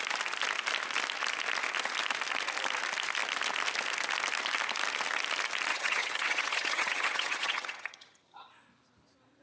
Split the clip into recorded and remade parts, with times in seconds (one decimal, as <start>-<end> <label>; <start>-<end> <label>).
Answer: 0.0-5.7 recorded; 5.7-8.5 remade; 8.5-9.4 recorded